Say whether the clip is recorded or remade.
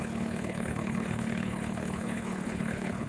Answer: remade